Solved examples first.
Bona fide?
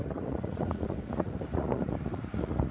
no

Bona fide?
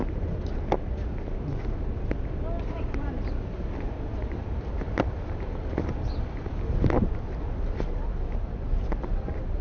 yes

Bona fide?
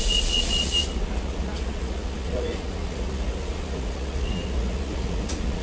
no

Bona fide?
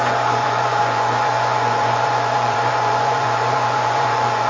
no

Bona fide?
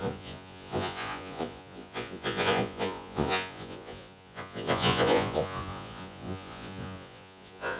no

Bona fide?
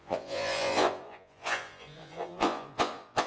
no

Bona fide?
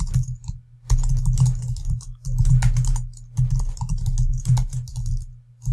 yes